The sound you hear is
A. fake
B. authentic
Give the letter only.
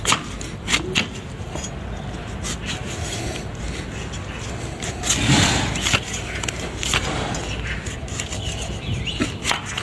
B